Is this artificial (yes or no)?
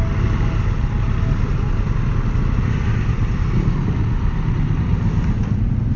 no